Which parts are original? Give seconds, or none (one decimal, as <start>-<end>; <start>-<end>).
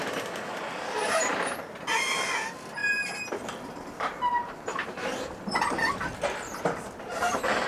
0.0-1.1; 1.6-4.7; 5.3-7.7